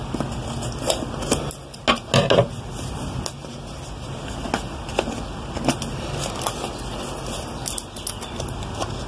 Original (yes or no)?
yes